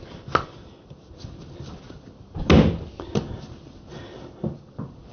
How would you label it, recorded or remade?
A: recorded